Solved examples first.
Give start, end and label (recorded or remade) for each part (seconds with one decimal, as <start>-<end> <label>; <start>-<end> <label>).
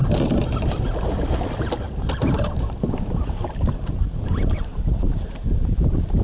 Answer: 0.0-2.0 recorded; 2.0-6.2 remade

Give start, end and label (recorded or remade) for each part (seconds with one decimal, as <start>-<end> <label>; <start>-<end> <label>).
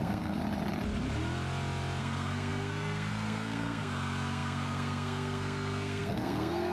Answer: 0.0-0.4 remade; 0.4-2.0 recorded; 2.0-6.7 remade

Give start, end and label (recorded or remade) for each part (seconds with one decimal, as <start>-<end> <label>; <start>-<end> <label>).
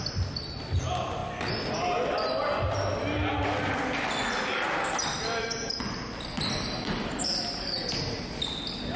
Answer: 0.0-9.0 recorded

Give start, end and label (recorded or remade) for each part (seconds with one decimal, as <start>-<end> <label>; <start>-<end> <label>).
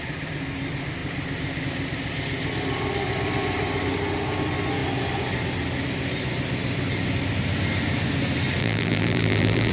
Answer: 0.0-8.6 recorded; 8.6-9.7 remade